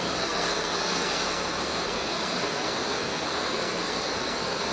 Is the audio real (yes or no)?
no